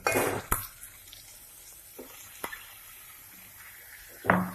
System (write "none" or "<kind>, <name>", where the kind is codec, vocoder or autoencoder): none